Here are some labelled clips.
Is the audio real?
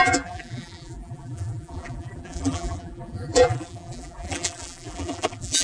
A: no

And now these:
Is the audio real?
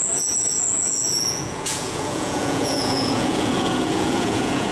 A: no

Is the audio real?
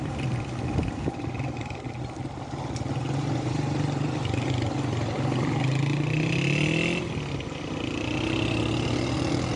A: yes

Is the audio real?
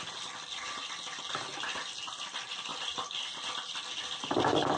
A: yes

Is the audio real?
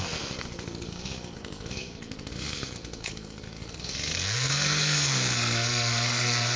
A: no